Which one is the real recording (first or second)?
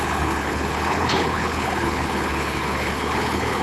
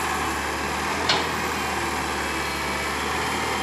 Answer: second